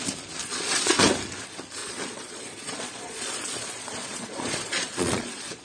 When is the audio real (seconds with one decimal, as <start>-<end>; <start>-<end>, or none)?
0.0-0.4; 1.0-1.8